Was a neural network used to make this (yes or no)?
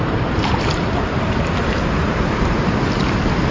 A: yes